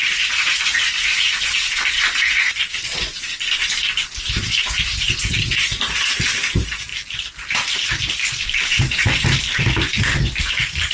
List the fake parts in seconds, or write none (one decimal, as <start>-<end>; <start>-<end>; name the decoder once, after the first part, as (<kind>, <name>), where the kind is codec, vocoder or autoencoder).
0.0-10.9 (vocoder, BigVGAN v2)